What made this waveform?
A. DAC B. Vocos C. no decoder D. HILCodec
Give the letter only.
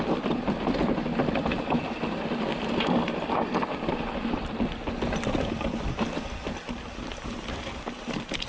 C